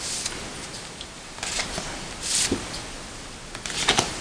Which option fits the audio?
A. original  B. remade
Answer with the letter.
A